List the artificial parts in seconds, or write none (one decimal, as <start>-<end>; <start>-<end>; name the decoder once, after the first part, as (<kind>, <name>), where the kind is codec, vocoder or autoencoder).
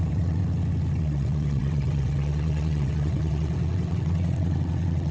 0.0-0.4 (vocoder, WaveNeXt); 1.0-5.1